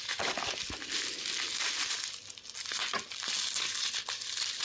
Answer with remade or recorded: recorded